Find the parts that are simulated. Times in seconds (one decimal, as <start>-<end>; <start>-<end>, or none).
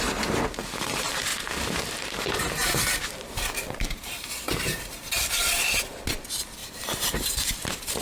1.3-5.8; 6.6-7.5